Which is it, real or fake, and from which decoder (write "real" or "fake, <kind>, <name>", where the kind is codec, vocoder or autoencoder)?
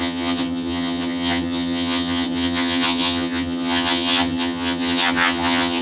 fake, vocoder, HiFi-GAN